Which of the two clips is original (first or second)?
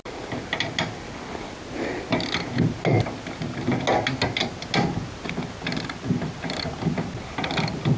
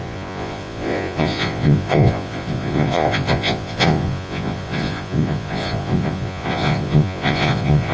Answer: first